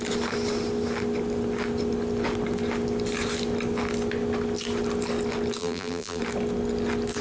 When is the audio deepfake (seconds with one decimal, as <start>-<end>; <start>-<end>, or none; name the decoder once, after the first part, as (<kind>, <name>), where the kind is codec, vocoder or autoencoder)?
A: 5.6-6.2 (vocoder, BigVGAN v2)